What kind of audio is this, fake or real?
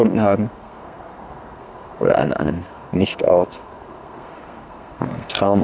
fake